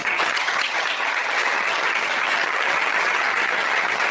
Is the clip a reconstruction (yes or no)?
yes